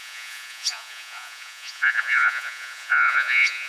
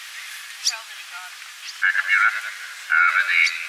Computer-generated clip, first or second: first